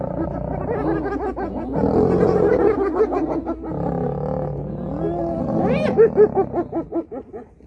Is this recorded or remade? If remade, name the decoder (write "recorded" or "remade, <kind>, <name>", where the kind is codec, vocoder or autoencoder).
recorded